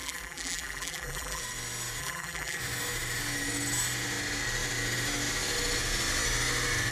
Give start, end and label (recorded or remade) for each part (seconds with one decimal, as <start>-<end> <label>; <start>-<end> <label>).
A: 0.0-1.4 remade; 1.4-2.0 recorded; 2.0-2.6 remade; 2.6-6.9 recorded

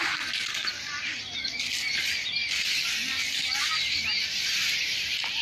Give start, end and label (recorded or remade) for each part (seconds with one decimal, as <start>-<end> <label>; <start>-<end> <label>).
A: 0.0-5.4 recorded